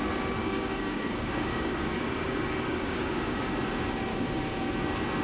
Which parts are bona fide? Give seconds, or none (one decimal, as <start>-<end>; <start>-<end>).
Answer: 0.0-0.4; 3.5-4.1; 4.7-5.2